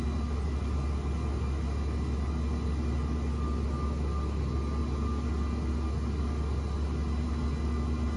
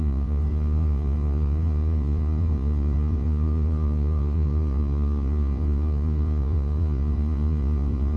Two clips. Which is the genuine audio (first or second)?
first